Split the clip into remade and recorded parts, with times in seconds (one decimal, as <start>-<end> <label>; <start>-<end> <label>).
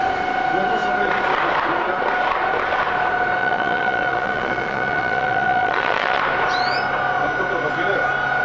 0.0-3.4 recorded; 3.4-6.2 remade; 6.2-8.4 recorded